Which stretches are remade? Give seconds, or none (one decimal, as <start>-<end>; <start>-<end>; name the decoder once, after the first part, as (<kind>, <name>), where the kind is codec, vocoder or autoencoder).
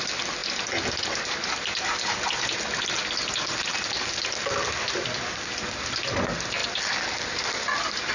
6.6-8.1 (vocoder, BigVGAN v2)